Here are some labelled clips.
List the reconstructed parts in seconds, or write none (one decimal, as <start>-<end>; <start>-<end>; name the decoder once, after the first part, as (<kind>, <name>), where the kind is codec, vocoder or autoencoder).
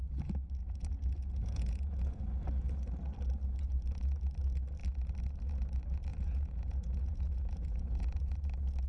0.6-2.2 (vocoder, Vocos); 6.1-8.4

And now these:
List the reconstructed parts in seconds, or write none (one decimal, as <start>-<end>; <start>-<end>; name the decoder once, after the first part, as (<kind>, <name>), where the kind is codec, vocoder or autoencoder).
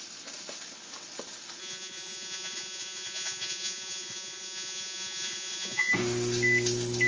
1.6-5.9 (vocoder, Vocos)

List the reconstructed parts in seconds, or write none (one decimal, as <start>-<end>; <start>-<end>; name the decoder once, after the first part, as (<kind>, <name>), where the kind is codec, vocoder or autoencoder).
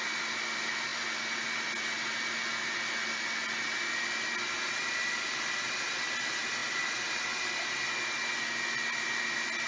none